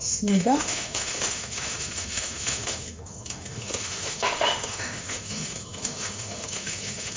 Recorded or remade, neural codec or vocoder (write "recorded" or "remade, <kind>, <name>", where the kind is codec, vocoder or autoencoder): remade, autoencoder, DAC-VAE